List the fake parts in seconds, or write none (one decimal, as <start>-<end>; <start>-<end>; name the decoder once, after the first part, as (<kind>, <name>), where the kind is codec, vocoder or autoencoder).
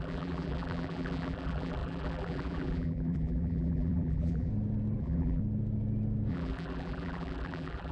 0.0-4.5 (vocoder, BigVGAN v2); 5.0-5.4; 6.3-7.9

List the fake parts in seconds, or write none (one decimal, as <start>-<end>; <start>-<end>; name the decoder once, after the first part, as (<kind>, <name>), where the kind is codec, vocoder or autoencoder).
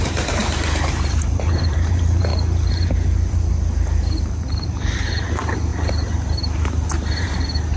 0.0-2.3 (vocoder, BigVGAN v2); 4.0-5.7; 7.2-7.8